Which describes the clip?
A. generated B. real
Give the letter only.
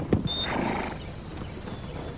B